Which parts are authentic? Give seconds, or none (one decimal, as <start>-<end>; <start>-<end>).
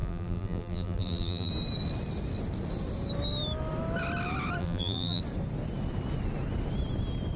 1.5-4.6; 5.2-7.4